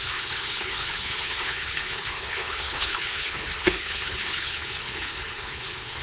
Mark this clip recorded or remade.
remade